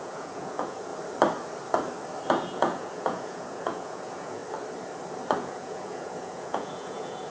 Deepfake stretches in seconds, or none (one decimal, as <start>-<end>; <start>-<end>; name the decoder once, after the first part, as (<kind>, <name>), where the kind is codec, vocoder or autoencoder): 0.0-0.9 (vocoder, Vocos); 2.3-4.4; 5.4-7.3